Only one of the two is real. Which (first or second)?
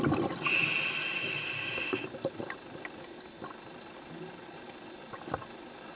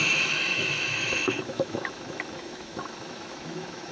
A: first